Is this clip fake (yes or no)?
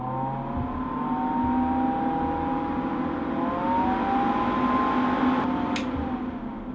no